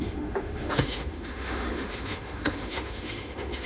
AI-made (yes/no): yes